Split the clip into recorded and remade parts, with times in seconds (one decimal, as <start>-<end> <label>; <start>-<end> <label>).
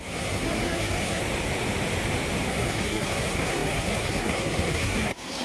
0.0-1.2 remade; 1.2-2.5 recorded; 2.5-5.4 remade